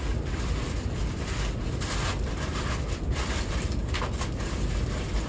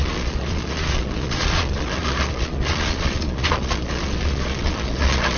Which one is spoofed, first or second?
second